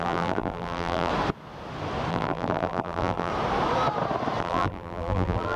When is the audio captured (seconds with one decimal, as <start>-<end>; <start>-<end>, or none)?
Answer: 1.1-2.1; 3.3-4.4